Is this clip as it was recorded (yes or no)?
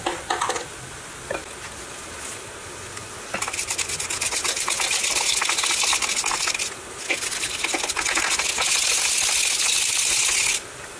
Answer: yes